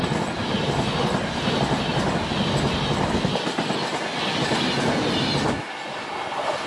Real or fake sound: real